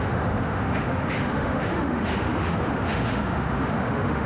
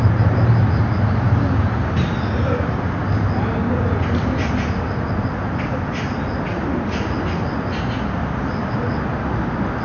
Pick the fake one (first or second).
first